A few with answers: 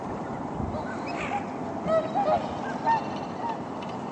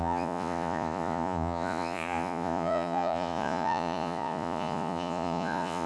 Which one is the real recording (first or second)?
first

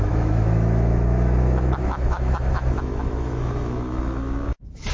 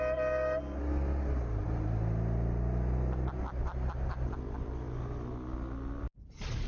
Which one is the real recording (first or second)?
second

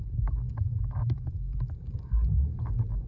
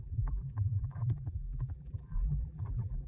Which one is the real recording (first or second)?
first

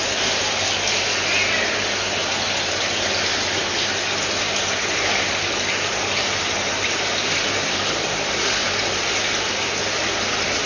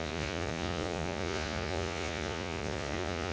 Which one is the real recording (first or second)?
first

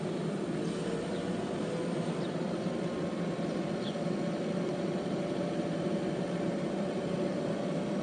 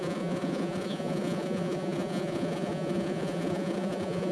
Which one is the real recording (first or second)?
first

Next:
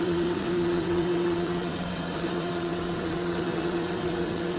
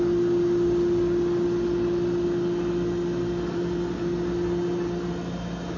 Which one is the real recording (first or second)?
second